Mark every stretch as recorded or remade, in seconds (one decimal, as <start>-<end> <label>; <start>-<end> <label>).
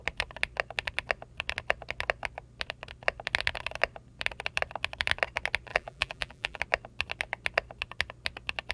0.0-5.7 recorded; 5.7-6.6 remade; 6.6-8.7 recorded